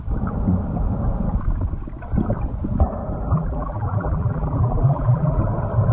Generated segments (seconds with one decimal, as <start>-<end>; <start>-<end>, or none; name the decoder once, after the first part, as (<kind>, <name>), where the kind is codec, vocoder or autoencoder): 3.3-5.4 (vocoder, BigVGAN v2)